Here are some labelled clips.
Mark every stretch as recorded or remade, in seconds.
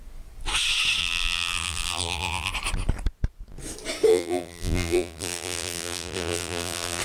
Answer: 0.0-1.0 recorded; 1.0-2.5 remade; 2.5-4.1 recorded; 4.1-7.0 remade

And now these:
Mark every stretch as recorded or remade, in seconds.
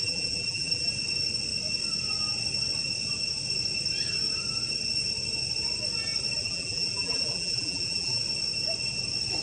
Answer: 0.0-0.9 remade; 0.9-6.4 recorded; 6.4-8.2 remade; 8.2-9.4 recorded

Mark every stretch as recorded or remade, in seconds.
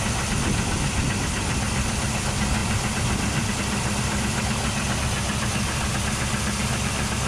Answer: 0.0-2.6 recorded; 2.6-3.5 remade; 3.5-7.3 recorded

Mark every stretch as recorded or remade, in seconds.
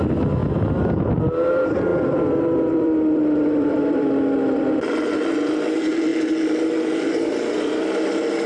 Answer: 0.0-0.4 recorded; 0.4-1.0 remade; 1.0-1.9 recorded; 1.9-4.8 remade; 4.8-8.5 recorded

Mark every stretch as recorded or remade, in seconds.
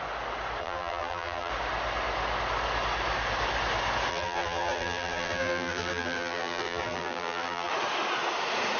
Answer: 0.0-0.6 recorded; 0.6-1.5 remade; 1.5-4.1 recorded; 4.1-7.7 remade; 7.7-8.8 recorded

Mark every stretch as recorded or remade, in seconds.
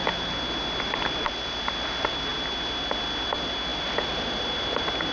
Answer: 0.0-3.7 recorded; 3.7-4.5 remade; 4.5-5.1 recorded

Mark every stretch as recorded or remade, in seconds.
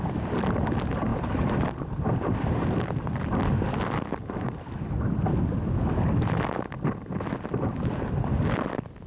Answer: 0.0-9.1 recorded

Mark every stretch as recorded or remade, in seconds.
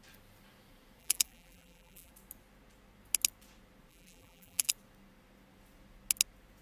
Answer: 0.0-1.0 recorded; 1.0-2.1 remade; 2.1-3.9 recorded; 3.9-4.7 remade; 4.7-6.6 recorded